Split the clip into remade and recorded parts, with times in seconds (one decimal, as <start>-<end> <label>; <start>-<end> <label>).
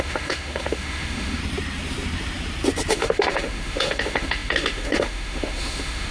0.0-1.4 remade; 1.4-2.9 recorded; 2.9-6.1 remade